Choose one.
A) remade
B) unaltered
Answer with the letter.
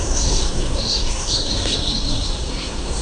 A